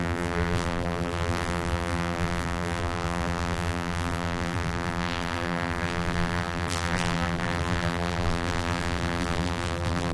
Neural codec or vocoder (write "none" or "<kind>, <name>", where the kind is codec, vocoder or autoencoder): vocoder, BigVGAN v2